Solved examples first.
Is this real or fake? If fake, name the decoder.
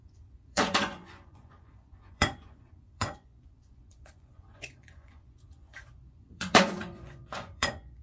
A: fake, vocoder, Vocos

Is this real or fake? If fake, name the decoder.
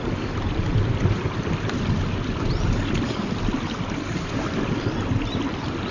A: real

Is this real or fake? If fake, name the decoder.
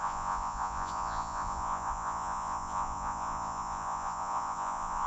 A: fake, vocoder, Vocos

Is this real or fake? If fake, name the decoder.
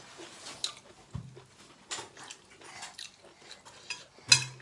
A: real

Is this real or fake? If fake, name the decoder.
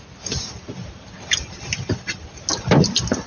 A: real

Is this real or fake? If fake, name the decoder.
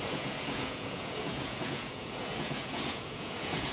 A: fake, vocoder, Vocos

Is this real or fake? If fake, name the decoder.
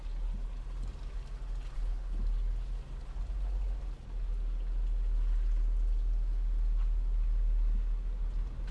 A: real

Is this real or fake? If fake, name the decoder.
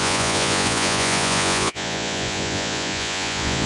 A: fake, vocoder, Vocos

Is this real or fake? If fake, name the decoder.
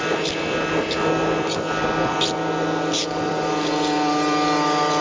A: real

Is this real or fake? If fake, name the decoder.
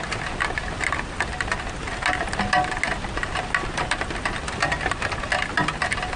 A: real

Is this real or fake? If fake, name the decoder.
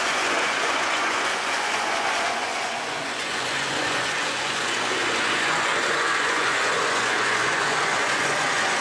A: fake, vocoder, Vocos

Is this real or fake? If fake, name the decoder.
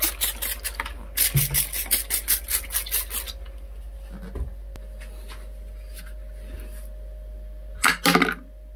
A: real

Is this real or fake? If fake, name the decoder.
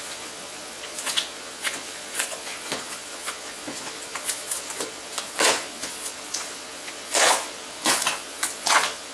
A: fake, vocoder, Vocos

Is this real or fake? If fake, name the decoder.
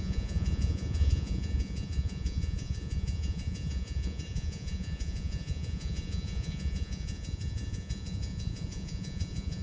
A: fake, vocoder, Vocos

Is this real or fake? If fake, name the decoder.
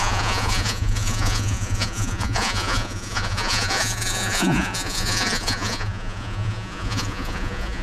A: fake, vocoder, Vocos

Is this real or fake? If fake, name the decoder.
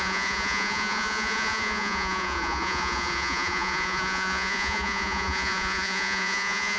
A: fake, vocoder, Vocos